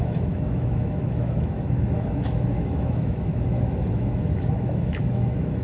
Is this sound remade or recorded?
remade